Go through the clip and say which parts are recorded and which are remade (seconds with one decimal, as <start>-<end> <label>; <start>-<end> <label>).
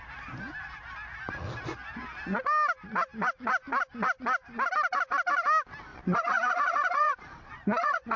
0.0-5.9 recorded; 5.9-8.2 remade